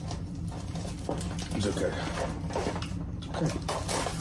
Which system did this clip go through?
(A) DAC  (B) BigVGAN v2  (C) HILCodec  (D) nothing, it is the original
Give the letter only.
D